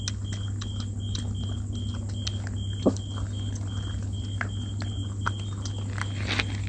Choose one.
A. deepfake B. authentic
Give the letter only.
B